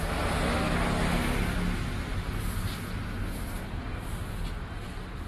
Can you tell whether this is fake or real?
real